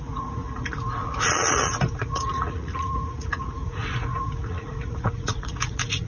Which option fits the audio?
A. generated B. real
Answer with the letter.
A